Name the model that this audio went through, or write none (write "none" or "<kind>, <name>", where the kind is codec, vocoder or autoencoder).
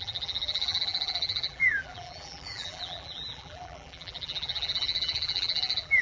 vocoder, BigVGAN v2